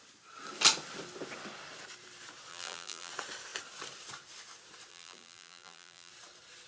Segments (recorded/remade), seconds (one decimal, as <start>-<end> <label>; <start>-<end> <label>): 0.0-2.5 recorded; 2.5-3.1 remade; 3.1-4.9 recorded; 4.9-6.1 remade; 6.1-6.7 recorded